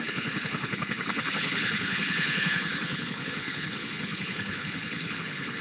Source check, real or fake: fake